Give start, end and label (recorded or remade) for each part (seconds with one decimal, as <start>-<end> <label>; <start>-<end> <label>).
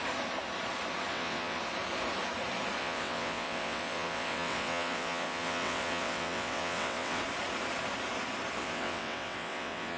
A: 0.0-1.1 recorded; 1.1-1.6 remade; 1.6-2.8 recorded; 2.8-7.2 remade; 7.2-8.6 recorded; 8.6-10.0 remade